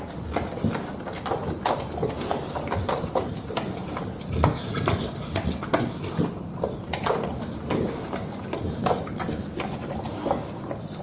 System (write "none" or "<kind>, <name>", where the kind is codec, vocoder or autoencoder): none